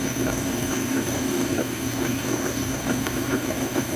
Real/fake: fake